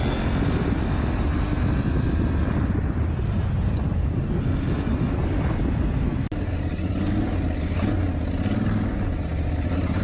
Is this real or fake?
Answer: real